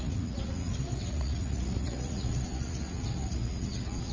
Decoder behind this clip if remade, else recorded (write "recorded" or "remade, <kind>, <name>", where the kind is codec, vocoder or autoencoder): remade, vocoder, Vocos